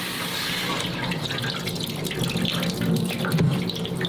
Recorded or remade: recorded